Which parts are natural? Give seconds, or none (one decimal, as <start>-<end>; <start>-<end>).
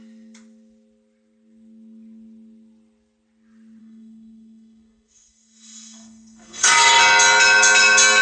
0.0-3.8; 7.0-8.2